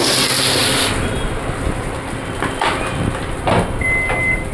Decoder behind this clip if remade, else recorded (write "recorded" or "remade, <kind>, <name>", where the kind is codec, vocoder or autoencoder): recorded